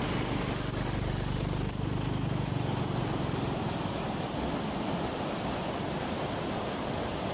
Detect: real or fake real